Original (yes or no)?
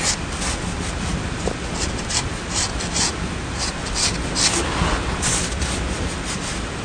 yes